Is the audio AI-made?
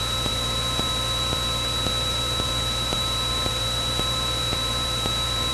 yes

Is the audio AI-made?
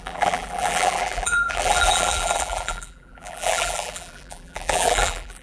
yes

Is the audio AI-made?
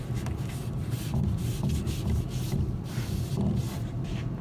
yes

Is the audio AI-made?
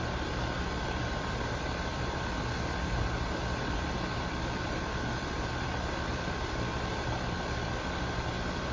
yes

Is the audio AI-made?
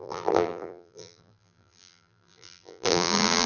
yes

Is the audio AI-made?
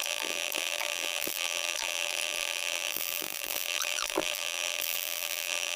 yes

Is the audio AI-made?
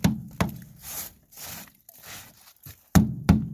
no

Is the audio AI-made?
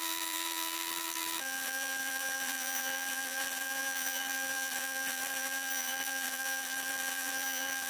yes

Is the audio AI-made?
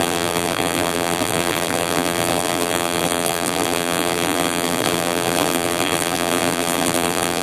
yes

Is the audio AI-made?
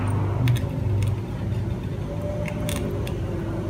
no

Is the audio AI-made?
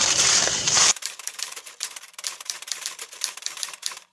yes